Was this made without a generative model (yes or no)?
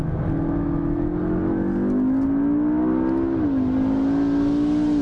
yes